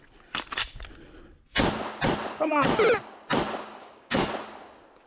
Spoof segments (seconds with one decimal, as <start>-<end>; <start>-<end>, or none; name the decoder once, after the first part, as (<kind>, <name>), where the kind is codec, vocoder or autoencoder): 3.8-4.3 (codec, DAC)